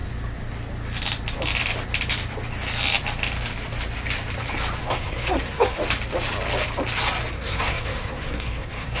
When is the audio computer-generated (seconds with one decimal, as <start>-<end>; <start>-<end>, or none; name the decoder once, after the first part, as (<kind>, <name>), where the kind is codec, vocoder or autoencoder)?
4.8-5.8 (codec, SNAC); 7.3-9.0